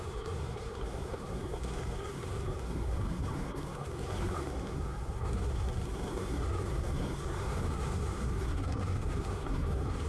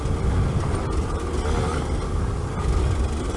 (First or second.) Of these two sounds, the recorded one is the second